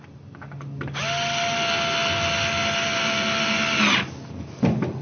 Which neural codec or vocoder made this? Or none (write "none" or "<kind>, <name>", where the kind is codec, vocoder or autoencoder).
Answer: none